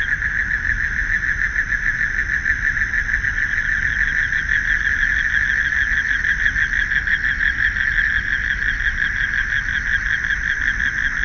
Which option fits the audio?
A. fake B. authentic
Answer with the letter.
B